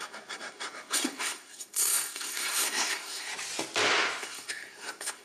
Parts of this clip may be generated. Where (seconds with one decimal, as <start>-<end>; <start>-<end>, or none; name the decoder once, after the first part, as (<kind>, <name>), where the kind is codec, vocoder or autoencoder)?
0.0-3.3 (codec, SNAC); 4.2-5.2